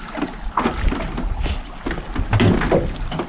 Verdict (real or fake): real